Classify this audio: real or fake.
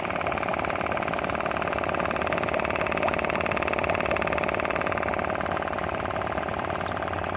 real